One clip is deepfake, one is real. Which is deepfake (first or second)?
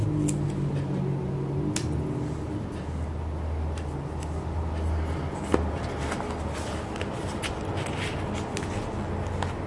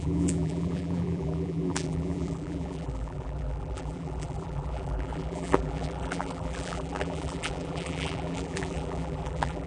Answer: second